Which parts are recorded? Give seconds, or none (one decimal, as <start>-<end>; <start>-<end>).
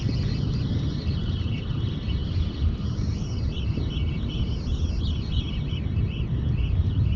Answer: 0.0-7.2